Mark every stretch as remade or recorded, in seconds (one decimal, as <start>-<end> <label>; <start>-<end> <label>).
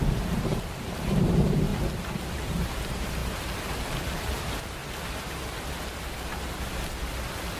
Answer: 0.0-1.7 remade; 1.7-2.3 recorded; 2.3-3.2 remade; 3.2-3.9 recorded; 3.9-4.8 remade; 4.8-7.6 recorded